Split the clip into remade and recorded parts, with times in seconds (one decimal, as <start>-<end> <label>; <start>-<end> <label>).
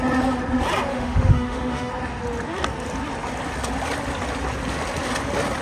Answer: 0.0-0.9 recorded; 0.9-1.9 remade; 1.9-5.6 recorded